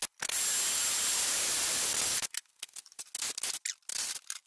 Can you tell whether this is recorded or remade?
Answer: recorded